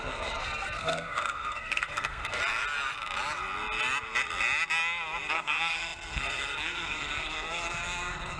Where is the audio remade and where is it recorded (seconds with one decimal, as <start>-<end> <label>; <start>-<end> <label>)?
0.0-2.4 remade; 2.4-5.3 recorded; 5.3-8.4 remade